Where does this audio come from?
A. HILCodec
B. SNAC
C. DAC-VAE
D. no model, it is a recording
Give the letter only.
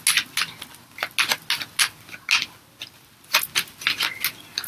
D